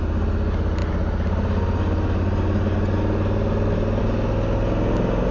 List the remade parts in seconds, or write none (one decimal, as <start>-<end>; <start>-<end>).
none

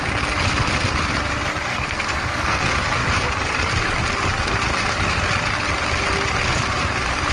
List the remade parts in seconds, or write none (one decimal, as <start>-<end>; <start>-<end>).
1.7-2.6